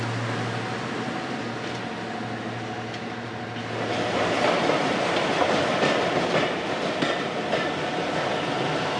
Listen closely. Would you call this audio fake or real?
real